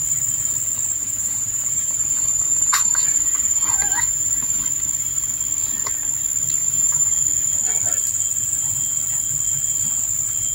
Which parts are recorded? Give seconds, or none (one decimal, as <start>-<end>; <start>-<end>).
0.0-1.0; 4.6-6.6; 7.2-10.5